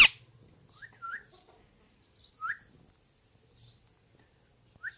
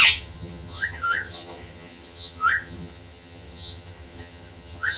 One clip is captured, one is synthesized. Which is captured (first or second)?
first